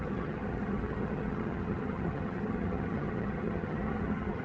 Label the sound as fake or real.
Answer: fake